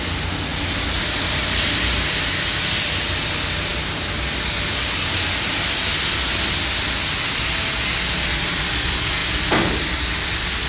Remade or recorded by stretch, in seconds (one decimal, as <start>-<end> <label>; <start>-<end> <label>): 0.0-10.7 recorded